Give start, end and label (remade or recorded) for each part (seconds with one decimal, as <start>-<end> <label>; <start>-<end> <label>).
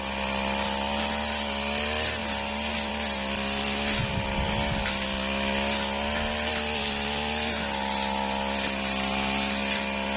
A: 0.0-10.2 recorded